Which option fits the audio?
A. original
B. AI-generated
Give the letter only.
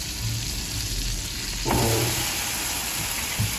A